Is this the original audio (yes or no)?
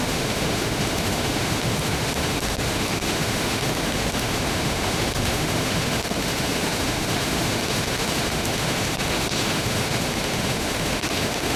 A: no